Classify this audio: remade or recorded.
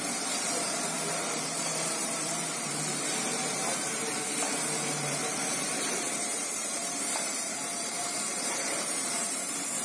remade